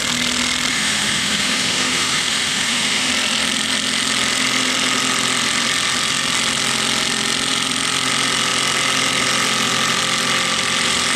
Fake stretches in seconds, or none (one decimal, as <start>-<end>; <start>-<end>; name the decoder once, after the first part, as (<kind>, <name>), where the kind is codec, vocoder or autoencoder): 0.7-3.1 (autoencoder, DAC-VAE)